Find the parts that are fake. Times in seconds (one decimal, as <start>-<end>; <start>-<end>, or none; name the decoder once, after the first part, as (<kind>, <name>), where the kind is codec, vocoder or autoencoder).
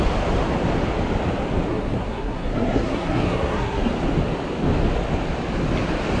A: 1.7-3.9 (codec, SNAC)